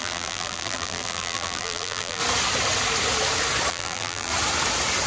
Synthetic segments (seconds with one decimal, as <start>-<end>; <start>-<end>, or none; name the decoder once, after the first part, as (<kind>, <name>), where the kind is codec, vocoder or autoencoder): 0.0-2.2 (vocoder, BigVGAN v2); 3.7-4.3